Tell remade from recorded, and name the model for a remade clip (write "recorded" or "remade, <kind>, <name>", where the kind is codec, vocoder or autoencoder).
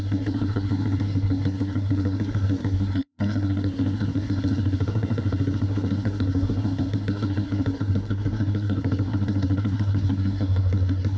remade, codec, SNAC